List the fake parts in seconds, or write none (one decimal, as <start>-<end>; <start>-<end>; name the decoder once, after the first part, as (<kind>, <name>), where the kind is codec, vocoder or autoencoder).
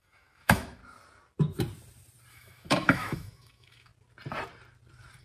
0.0-0.8 (autoencoder, DAC-VAE); 2.3-3.9